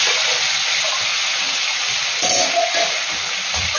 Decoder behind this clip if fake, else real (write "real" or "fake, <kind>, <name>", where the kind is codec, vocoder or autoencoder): real